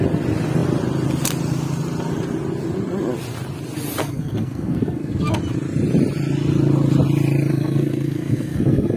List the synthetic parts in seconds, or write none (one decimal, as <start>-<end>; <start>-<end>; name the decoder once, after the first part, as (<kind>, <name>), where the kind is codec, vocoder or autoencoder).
4.0-5.4 (codec, SNAC); 7.5-9.0